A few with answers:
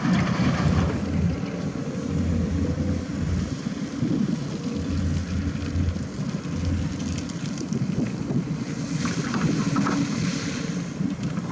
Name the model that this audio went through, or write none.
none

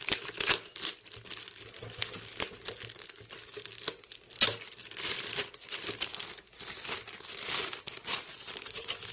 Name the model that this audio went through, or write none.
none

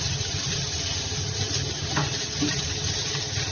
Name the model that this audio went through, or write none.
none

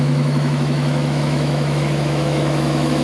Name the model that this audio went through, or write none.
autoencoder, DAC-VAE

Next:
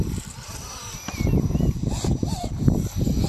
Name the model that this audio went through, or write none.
none